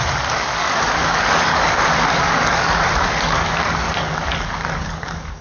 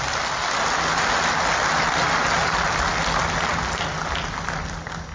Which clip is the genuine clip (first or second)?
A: second